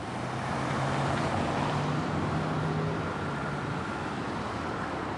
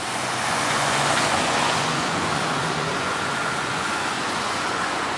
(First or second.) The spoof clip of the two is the second